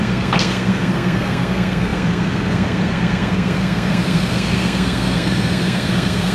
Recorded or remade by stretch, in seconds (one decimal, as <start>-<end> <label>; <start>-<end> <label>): 0.0-6.3 remade